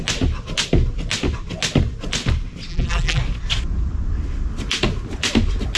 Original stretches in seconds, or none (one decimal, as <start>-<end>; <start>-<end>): 0.0-2.7; 3.2-5.8